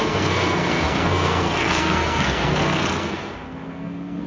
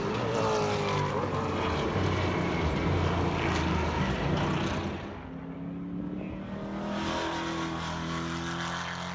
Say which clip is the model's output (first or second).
first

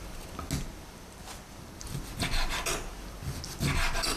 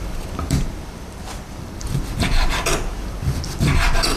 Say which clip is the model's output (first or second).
second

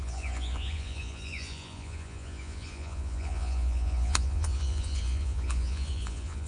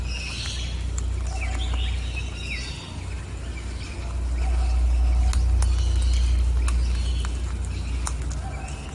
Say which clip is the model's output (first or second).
first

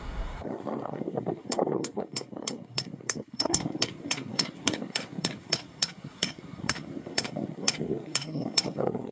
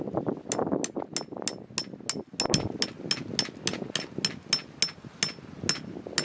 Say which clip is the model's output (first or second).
first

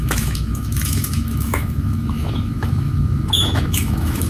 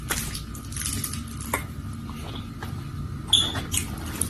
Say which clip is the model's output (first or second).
first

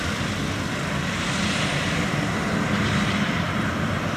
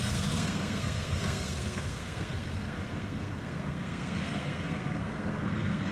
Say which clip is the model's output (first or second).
second